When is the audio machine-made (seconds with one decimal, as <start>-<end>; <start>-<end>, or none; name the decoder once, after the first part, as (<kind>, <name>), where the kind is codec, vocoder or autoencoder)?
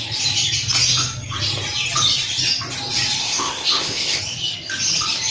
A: 3.2-4.2 (codec, ZipCodec)